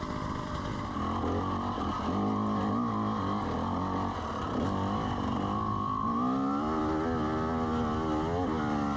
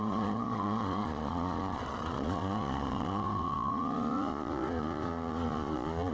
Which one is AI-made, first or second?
second